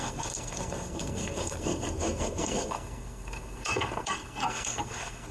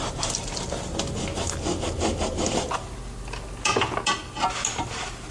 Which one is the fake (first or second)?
first